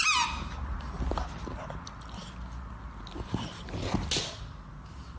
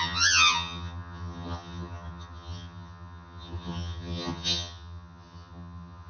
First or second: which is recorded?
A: first